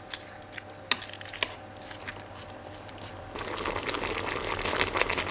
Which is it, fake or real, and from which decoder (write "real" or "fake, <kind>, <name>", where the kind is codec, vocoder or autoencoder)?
real